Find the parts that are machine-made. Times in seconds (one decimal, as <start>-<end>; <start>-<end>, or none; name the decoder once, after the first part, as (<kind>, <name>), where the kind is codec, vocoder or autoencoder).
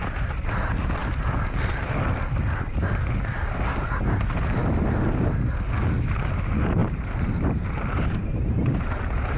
6.8-9.4 (vocoder, BigVGAN v2)